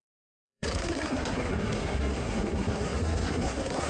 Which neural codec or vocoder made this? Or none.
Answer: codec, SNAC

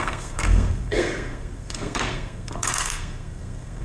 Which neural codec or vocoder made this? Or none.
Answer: codec, SNAC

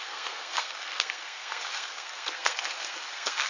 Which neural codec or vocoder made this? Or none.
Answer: codec, SNAC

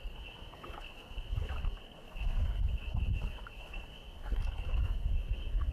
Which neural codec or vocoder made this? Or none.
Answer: codec, SNAC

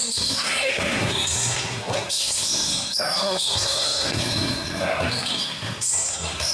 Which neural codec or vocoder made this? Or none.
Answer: codec, SNAC